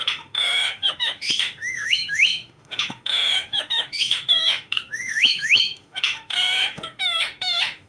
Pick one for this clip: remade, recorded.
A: remade